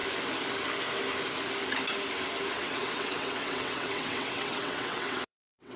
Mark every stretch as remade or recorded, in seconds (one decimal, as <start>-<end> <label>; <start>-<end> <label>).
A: 0.0-2.5 recorded; 2.5-5.8 remade

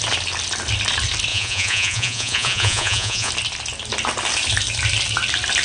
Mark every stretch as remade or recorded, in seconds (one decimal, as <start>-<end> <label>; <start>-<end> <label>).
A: 0.0-1.3 recorded; 1.3-3.3 remade; 3.3-5.6 recorded

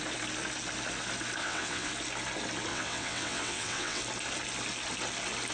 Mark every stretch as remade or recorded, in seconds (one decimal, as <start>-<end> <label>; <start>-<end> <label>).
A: 0.0-1.4 recorded; 1.4-1.9 remade; 1.9-2.7 recorded; 2.7-4.0 remade; 4.0-5.5 recorded

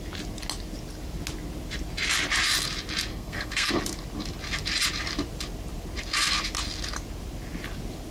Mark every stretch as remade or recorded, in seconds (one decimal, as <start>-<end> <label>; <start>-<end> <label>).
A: 0.0-3.1 recorded; 3.1-3.7 remade; 3.7-8.1 recorded

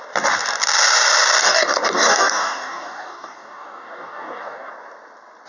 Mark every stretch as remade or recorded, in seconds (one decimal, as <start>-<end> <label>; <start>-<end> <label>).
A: 0.0-1.4 recorded; 1.4-4.7 remade; 4.7-5.5 recorded

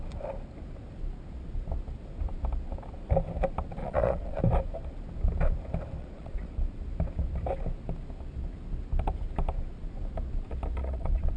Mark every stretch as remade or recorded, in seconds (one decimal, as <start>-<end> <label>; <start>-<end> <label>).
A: 0.0-3.8 recorded; 3.8-4.4 remade; 4.4-6.0 recorded; 6.0-6.5 remade; 6.5-10.8 recorded; 10.8-11.4 remade

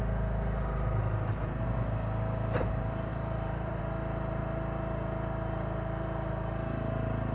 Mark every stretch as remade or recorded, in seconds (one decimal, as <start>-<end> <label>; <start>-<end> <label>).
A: 0.0-3.1 recorded; 3.1-3.8 remade; 3.8-7.3 recorded